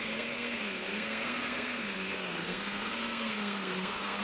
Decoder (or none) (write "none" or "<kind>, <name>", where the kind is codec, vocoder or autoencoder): codec, SNAC